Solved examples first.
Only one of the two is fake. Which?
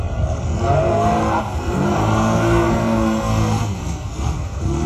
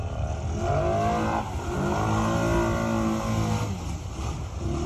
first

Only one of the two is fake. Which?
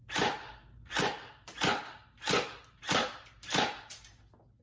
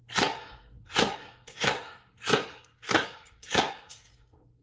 second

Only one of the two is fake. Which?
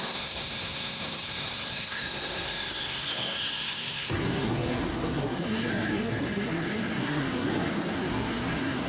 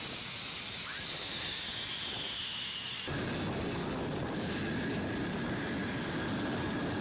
first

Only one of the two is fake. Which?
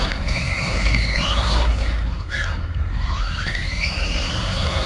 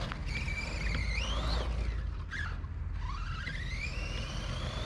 first